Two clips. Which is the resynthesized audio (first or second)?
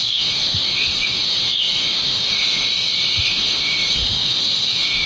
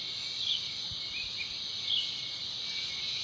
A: first